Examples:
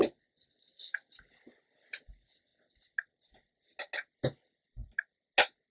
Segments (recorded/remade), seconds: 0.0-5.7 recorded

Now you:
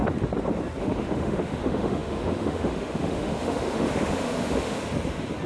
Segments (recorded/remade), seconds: 0.0-0.8 recorded; 0.8-4.8 remade; 4.8-5.5 recorded

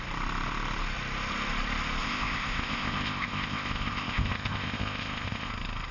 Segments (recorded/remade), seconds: 0.0-2.0 recorded; 2.0-5.5 remade; 5.5-5.9 recorded

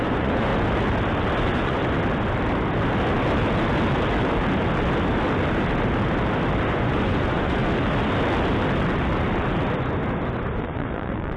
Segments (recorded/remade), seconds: 0.0-0.5 remade; 0.5-1.4 recorded; 1.4-1.8 remade; 1.8-6.7 recorded; 6.7-7.6 remade; 7.6-10.6 recorded; 10.6-11.4 remade

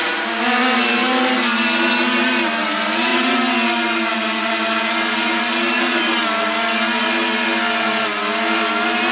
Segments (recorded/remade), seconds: 0.0-9.1 recorded

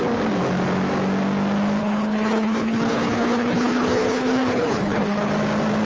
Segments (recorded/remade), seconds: 0.0-1.8 recorded; 1.8-5.3 remade; 5.3-5.8 recorded

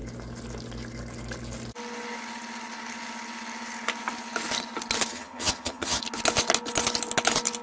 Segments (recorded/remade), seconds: 0.0-5.1 recorded; 5.1-6.0 remade; 6.0-7.6 recorded